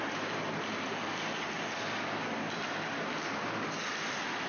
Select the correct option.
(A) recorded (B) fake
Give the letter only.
A